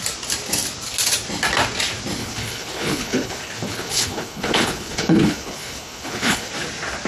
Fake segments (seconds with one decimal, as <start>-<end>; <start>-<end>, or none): 2.2-6.5